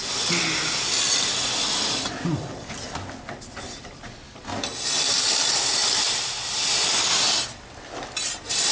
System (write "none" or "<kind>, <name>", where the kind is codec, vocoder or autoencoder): none